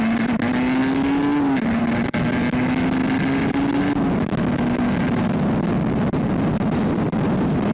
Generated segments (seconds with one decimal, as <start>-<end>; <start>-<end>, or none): none

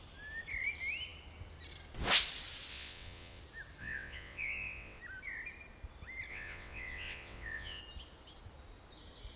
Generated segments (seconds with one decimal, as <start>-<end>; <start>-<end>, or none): 2.7-3.4; 3.8-5.0; 6.3-7.8